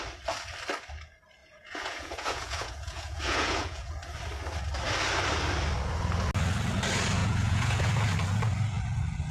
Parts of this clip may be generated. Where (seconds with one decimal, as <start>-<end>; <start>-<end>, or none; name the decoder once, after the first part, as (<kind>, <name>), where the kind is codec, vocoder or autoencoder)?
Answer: 1.4-3.9 (vocoder, Vocos); 7.2-7.9